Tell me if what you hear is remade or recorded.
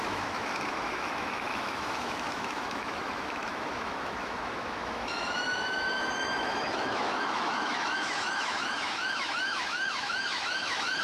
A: remade